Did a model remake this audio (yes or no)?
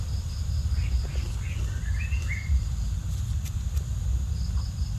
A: no